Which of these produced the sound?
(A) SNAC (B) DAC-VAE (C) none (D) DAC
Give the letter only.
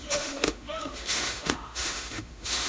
B